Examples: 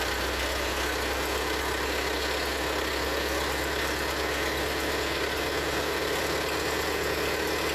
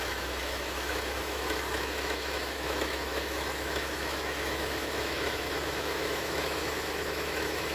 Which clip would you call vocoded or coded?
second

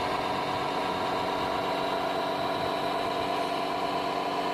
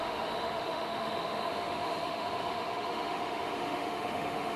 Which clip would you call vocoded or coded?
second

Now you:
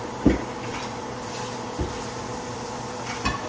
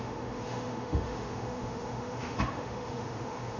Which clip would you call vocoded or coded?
second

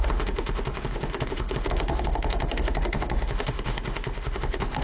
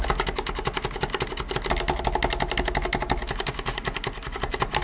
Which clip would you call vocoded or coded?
first